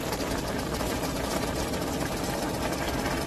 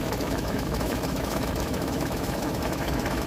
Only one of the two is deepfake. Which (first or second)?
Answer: second